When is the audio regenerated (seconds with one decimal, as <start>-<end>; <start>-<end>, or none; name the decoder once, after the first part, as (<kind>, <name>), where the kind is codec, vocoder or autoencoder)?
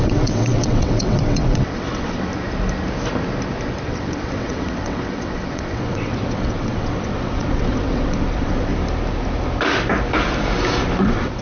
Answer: 0.0-2.3 (vocoder, WaveNeXt); 3.9-8.7; 11.0-11.4